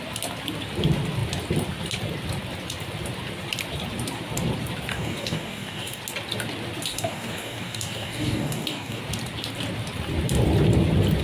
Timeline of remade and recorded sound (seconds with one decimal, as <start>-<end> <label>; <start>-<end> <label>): 0.0-4.9 recorded; 4.9-6.0 remade; 6.0-6.9 recorded; 6.9-9.0 remade; 9.0-11.2 recorded